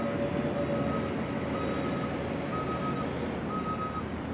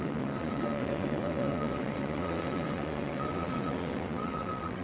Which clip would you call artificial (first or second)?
second